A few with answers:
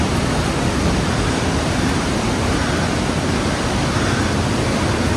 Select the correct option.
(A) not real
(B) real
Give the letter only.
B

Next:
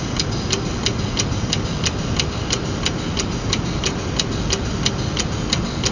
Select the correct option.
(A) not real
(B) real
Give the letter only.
B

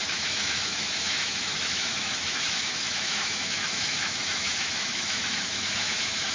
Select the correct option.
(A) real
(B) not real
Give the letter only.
B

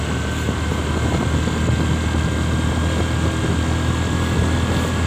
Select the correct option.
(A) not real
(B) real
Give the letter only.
B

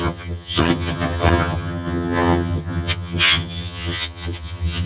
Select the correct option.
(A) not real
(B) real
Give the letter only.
A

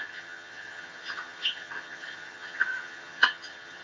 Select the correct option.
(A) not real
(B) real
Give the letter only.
A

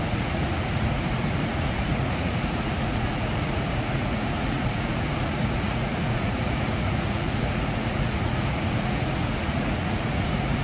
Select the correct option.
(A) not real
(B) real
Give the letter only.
A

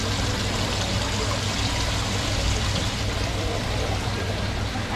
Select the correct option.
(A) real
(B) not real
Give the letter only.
A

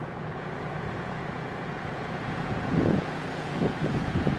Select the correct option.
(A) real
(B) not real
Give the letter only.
B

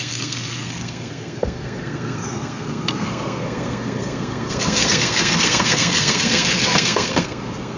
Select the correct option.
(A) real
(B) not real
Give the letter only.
B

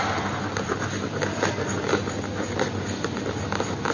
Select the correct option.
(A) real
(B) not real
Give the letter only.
A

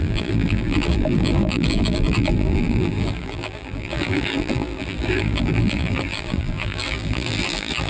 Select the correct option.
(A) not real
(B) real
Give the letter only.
A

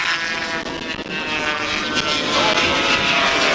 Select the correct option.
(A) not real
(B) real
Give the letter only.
B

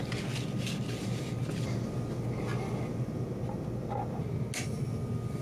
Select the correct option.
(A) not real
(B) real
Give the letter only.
B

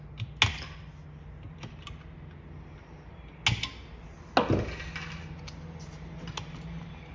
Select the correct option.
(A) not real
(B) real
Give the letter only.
B